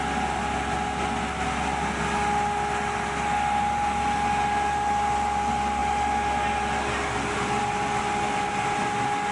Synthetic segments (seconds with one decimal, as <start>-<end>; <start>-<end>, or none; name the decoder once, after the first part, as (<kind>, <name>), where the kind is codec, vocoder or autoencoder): none